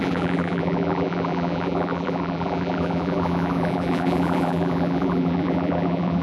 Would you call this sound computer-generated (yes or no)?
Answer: yes